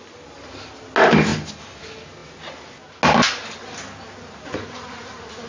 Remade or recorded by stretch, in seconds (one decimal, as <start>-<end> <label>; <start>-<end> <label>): 0.0-5.5 recorded